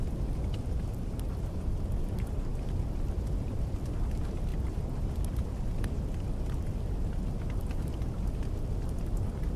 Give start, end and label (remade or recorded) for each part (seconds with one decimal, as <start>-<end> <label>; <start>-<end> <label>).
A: 0.0-9.6 recorded